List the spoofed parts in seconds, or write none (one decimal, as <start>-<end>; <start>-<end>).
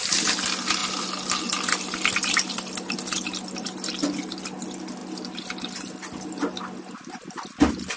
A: none